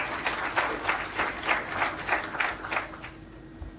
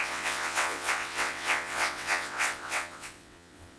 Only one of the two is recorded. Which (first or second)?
first